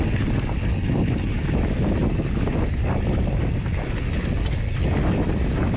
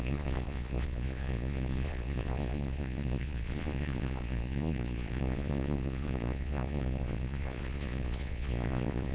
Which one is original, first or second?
first